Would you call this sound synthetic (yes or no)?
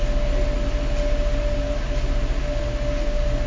no